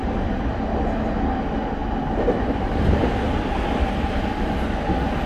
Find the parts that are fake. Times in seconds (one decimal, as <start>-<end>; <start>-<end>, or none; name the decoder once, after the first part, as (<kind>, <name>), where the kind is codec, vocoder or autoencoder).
none